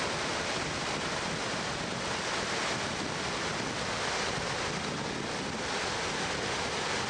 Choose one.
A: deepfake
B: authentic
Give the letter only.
B